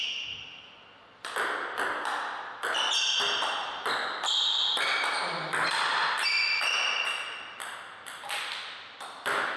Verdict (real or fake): real